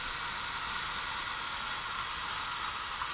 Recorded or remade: recorded